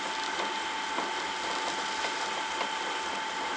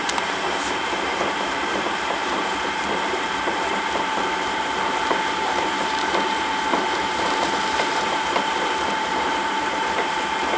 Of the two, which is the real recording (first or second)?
first